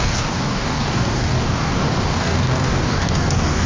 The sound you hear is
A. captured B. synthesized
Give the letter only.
B